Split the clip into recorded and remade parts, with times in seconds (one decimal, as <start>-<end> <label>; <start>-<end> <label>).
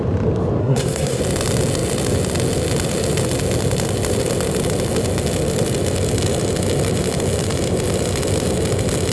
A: 0.0-0.6 recorded; 0.6-1.2 remade; 1.2-9.1 recorded